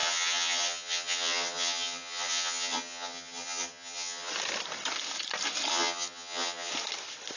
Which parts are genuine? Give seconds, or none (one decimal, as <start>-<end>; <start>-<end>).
4.3-5.7; 6.7-7.4